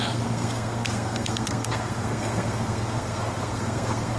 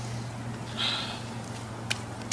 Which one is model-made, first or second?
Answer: first